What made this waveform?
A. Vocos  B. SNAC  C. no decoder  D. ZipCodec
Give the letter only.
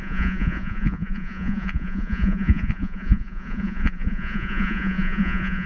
A